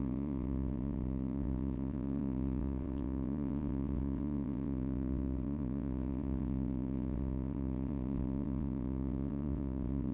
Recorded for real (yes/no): no